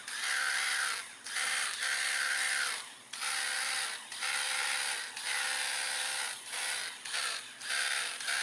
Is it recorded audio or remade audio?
remade